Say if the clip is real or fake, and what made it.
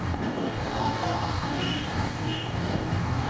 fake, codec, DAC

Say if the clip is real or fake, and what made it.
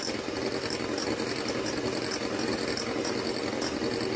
real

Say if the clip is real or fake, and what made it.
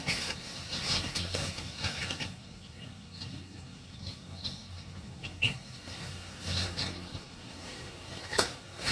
fake, codec, SNAC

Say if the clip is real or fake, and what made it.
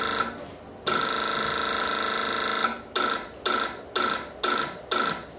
real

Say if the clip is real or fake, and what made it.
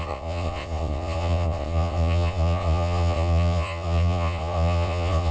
fake, vocoder, Vocos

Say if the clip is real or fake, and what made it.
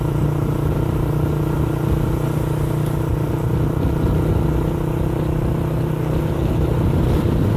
real